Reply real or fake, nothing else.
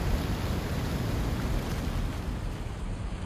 real